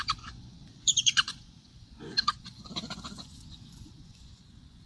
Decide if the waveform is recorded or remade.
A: remade